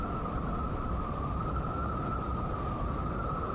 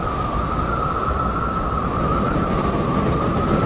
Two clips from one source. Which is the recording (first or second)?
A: second